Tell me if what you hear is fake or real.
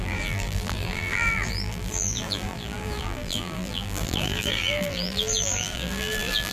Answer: fake